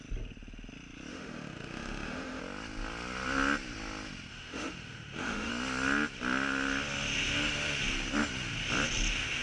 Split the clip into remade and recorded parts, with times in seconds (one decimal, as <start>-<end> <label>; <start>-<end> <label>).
0.0-1.1 recorded; 1.1-2.4 remade; 2.4-4.3 recorded; 4.3-5.5 remade; 5.5-9.4 recorded